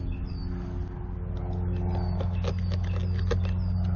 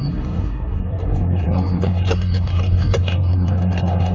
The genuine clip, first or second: first